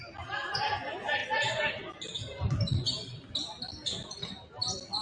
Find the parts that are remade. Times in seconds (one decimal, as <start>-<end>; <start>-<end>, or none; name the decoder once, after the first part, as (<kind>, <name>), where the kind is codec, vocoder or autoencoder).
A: none

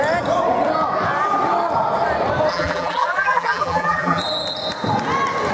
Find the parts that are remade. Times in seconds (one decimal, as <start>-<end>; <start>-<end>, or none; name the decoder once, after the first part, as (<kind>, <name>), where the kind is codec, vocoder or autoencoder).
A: 2.5-4.2 (vocoder, BigVGAN v2)